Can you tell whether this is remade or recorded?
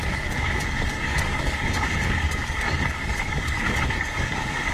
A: remade